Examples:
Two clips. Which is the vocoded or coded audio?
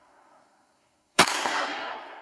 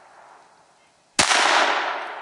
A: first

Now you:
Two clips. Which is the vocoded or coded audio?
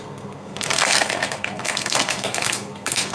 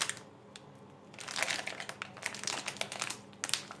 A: first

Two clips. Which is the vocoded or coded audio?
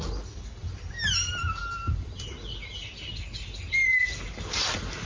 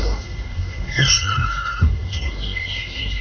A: second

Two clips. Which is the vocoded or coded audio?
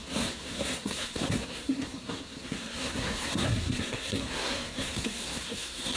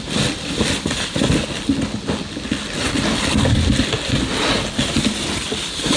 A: first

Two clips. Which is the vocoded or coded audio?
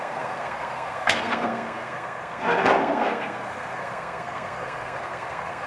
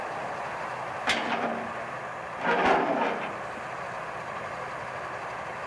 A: first